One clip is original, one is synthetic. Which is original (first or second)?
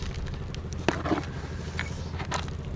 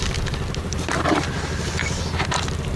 first